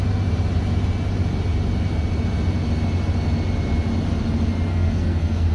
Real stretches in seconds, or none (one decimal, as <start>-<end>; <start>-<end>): 0.0-4.7